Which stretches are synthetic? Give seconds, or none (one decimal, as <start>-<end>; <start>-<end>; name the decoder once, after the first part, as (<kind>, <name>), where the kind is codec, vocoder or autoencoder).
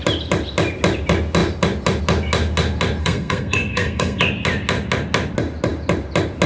3.0-4.2 (codec, SNAC)